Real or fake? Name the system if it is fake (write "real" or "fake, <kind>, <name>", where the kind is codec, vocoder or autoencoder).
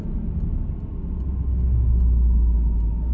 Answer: real